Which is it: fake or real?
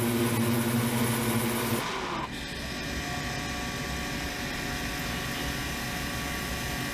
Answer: real